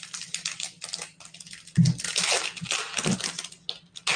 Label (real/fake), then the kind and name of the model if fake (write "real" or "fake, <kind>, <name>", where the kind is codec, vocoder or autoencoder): real